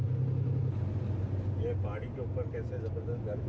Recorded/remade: recorded